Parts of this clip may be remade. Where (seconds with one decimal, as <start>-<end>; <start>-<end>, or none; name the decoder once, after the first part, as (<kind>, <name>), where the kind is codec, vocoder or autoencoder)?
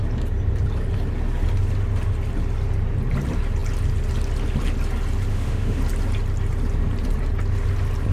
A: 5.3-5.8 (autoencoder, DAC-VAE)